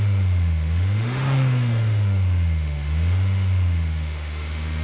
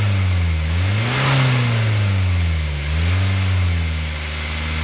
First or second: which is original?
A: second